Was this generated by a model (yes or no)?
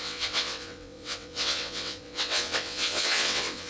yes